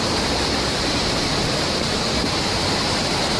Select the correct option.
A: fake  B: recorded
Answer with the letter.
B